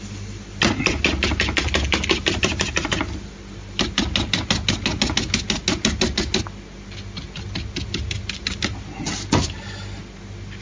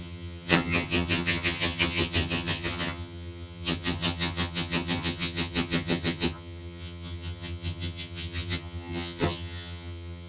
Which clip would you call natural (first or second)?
first